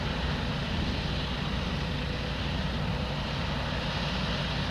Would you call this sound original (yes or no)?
yes